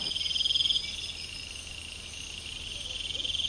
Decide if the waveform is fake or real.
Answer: real